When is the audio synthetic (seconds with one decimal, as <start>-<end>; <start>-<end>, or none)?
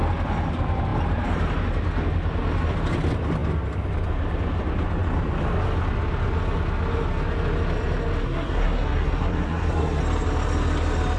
8.2-10.0